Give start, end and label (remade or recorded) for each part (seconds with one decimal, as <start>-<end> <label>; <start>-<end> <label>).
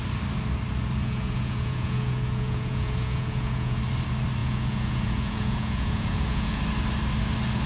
0.0-1.0 recorded; 1.0-3.8 remade; 3.8-4.4 recorded; 4.4-6.6 remade; 6.6-7.7 recorded